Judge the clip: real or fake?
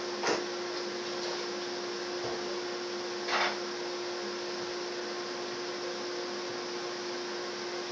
real